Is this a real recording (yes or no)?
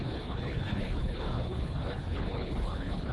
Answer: no